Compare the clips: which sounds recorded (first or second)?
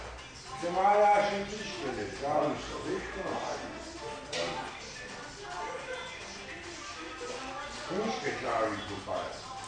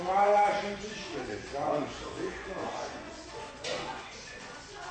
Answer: first